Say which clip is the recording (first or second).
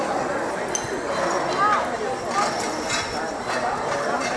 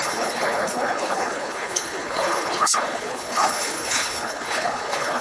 first